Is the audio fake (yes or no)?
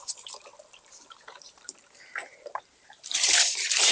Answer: yes